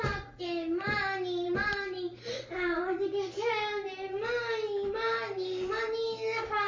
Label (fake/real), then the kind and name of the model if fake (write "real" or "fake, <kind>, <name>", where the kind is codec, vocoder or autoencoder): real